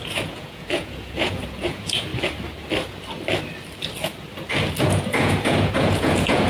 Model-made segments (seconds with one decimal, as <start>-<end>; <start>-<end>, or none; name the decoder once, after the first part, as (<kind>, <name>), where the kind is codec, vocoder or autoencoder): 0.0-2.1 (vocoder, Vocos); 4.8-6.5